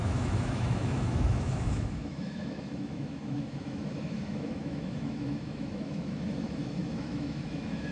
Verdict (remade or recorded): remade